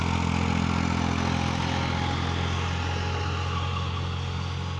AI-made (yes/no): no